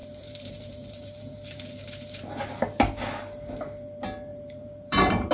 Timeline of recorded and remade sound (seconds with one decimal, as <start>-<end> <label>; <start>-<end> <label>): 0.0-2.3 remade; 2.3-4.3 recorded; 4.3-5.3 remade